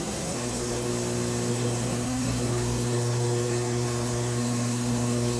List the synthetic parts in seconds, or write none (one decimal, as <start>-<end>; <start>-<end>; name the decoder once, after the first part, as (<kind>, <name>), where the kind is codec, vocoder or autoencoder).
0.0-0.9 (codec, SNAC); 1.5-5.4